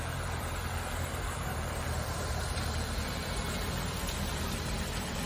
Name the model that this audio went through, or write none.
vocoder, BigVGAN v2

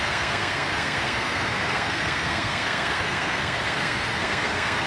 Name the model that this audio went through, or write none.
codec, SNAC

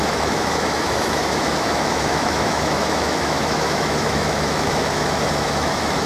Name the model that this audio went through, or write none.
autoencoder, DAC-VAE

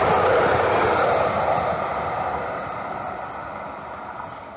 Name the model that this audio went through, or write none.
none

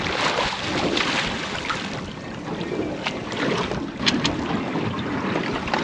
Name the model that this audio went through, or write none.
none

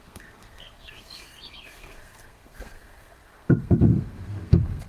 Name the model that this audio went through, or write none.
codec, SNAC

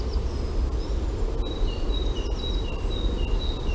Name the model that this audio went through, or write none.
none